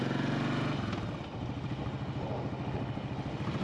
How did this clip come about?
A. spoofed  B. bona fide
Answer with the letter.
B